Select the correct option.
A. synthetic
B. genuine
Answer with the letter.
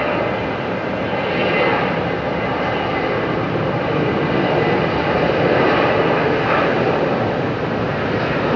B